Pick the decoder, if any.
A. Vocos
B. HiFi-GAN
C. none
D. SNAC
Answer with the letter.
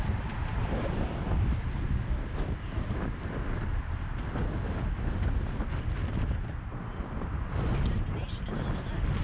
C